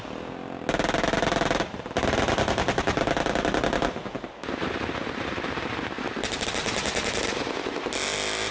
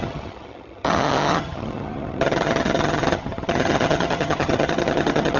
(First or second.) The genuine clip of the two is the first